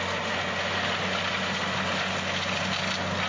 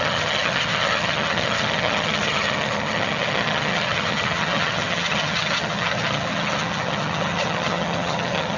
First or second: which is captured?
first